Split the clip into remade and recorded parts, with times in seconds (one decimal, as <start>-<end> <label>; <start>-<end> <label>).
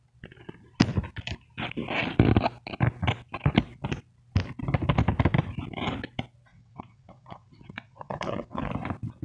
0.0-6.5 recorded; 6.5-8.7 remade; 8.7-9.2 recorded